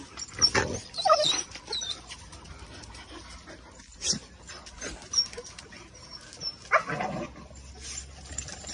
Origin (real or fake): real